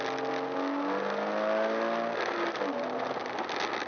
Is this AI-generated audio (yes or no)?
no